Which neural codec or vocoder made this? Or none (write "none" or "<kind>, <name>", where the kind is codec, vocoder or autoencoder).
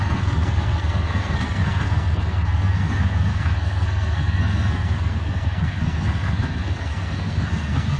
codec, SNAC